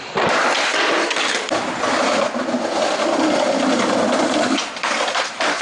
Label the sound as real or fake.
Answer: fake